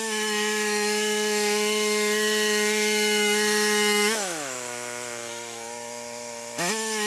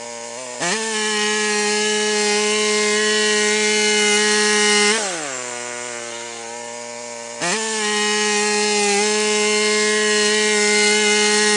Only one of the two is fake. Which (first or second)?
first